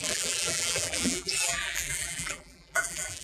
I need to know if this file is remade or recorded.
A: remade